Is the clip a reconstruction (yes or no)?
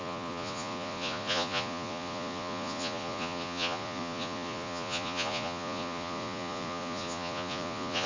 yes